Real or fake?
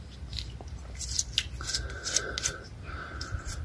real